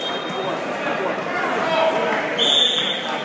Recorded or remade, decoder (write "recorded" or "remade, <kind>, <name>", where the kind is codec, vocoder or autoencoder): recorded